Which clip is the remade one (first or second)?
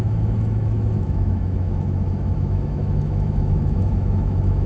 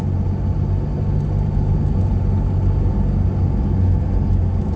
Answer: first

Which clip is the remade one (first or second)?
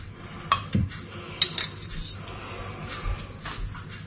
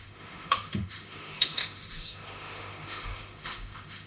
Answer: second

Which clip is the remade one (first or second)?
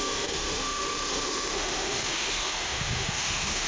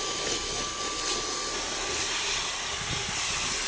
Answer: first